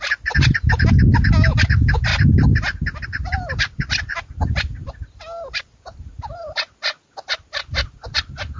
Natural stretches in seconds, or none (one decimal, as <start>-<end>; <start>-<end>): 0.0-8.6